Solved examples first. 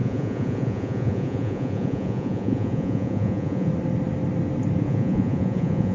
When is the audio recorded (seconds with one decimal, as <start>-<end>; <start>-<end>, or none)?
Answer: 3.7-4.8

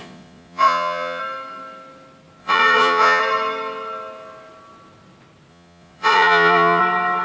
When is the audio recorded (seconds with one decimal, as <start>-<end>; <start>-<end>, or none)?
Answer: 1.2-2.4; 3.2-5.5; 6.8-7.2

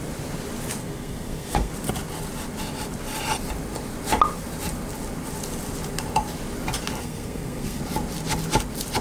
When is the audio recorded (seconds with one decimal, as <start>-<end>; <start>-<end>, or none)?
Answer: 0.0-0.8; 1.7-7.0; 7.8-9.0

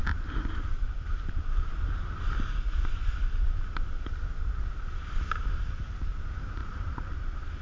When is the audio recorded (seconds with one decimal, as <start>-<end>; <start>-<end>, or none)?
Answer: 0.0-6.6

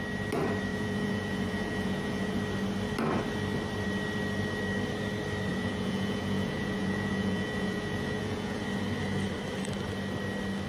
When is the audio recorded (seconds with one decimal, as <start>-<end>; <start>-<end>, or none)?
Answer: 0.0-0.7; 2.4-5.5; 8.6-10.7

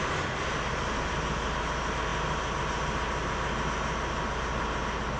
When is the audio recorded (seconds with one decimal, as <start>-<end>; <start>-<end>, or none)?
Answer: 0.0-5.2